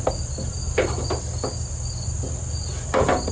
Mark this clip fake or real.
real